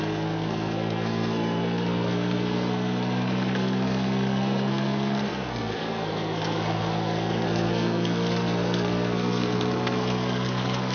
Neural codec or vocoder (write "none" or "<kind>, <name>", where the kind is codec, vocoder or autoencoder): codec, SNAC